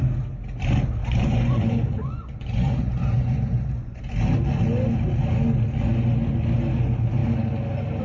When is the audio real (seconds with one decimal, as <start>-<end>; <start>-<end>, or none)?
0.0-1.0; 4.0-8.0